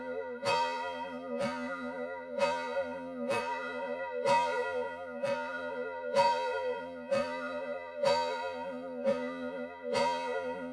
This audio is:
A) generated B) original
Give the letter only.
A